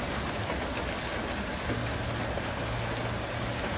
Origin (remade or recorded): recorded